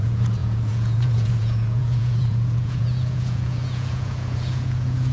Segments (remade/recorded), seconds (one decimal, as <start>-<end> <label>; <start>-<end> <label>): 0.0-5.1 remade